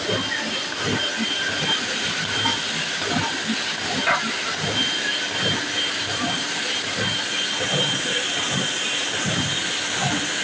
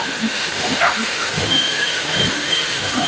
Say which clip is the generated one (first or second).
second